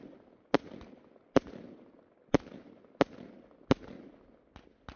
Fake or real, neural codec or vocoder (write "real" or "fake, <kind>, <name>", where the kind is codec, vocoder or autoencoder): real